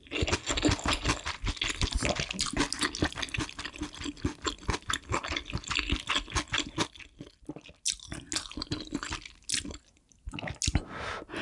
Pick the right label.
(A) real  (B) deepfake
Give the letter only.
A